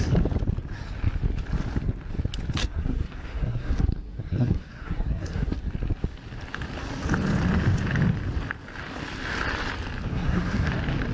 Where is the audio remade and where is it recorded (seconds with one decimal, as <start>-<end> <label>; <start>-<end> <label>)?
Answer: 0.0-2.6 recorded; 2.6-5.7 remade; 5.7-10.1 recorded; 10.1-10.7 remade; 10.7-11.1 recorded